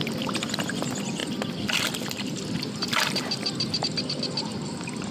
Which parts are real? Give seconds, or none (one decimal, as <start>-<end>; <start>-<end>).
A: 0.0-5.1